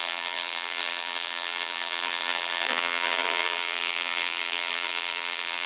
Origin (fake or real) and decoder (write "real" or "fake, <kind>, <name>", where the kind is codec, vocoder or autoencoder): fake, vocoder, BigVGAN v2